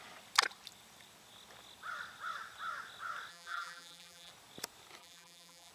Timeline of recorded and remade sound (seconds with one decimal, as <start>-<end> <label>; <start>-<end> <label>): 0.0-3.3 recorded; 3.3-4.3 remade; 4.3-5.0 recorded; 5.0-5.7 remade